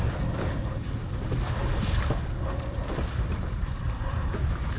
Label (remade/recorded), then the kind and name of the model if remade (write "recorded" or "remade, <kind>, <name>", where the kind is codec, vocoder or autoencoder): recorded